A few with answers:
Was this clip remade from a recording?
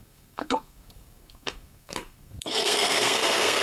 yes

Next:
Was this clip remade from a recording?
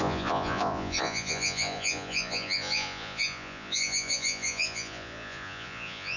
yes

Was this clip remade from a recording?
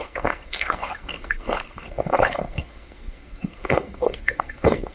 yes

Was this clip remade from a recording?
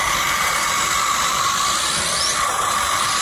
no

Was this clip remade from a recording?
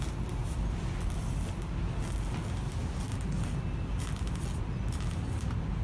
no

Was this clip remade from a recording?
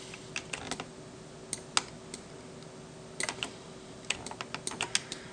no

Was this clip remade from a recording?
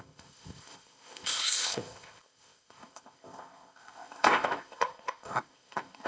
yes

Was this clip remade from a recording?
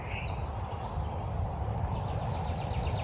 no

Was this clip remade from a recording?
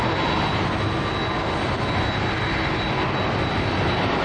no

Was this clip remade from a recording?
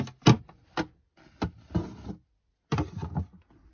no